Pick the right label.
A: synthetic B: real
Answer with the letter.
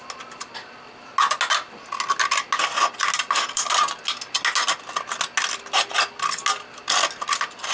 B